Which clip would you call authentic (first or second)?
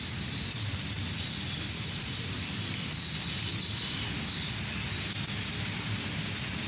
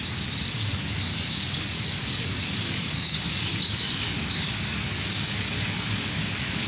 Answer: first